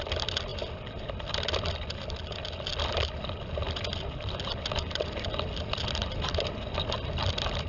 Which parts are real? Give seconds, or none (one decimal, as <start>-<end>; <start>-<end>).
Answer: 0.0-0.5; 1.1-7.7